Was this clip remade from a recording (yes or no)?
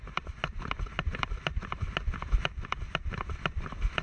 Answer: yes